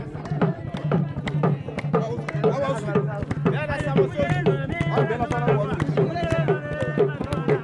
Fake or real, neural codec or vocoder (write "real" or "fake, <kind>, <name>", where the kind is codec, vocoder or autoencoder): real